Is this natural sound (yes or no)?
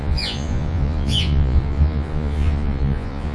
no